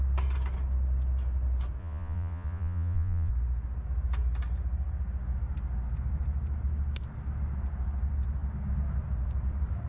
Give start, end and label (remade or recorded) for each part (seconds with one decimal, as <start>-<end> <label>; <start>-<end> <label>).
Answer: 0.0-1.8 recorded; 1.8-3.3 remade; 3.3-9.9 recorded